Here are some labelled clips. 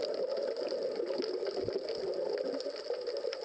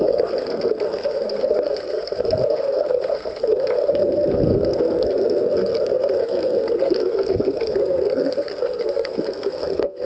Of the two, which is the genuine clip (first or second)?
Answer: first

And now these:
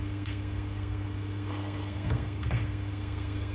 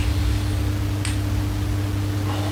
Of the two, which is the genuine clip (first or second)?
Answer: second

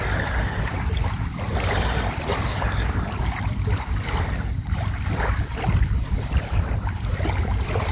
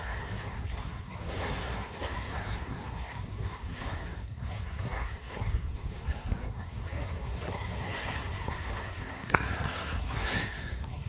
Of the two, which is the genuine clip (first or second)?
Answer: first